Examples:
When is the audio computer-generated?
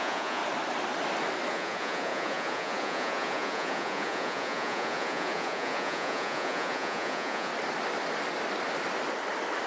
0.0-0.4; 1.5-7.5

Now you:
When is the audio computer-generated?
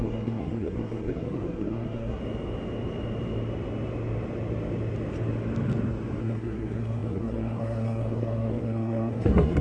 0.0-2.2; 6.2-9.6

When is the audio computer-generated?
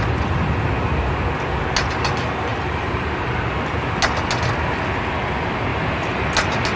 2.5-3.4; 5.7-6.3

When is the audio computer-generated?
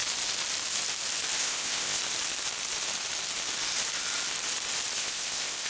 1.4-2.0; 5.0-5.7